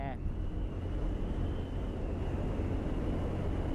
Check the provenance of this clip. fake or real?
real